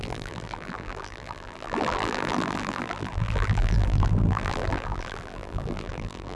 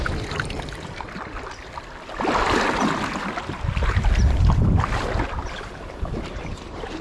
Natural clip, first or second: second